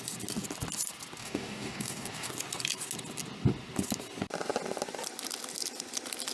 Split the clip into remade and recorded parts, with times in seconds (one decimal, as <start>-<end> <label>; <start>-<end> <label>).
0.0-1.2 recorded; 1.2-2.3 remade; 2.3-6.3 recorded